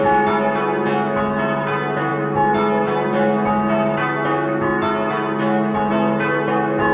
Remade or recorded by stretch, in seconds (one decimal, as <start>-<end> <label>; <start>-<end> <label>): 0.0-6.9 recorded